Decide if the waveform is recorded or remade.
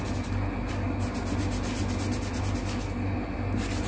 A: recorded